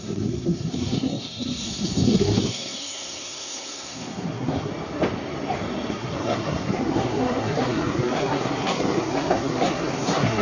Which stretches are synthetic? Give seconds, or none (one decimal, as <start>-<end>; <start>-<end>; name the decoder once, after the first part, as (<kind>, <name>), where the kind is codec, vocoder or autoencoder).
0.0-4.7 (codec, SNAC); 5.9-10.4